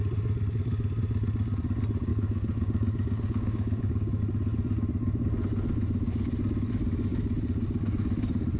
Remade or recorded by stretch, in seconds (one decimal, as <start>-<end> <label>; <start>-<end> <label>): 0.0-2.1 recorded; 2.1-4.2 remade; 4.2-8.6 recorded